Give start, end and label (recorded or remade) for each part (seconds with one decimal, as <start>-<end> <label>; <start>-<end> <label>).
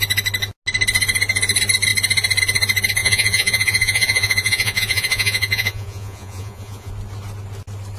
0.0-3.0 recorded; 3.0-6.9 remade; 6.9-8.0 recorded